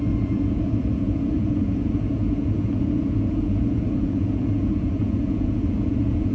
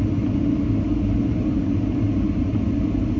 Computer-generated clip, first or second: first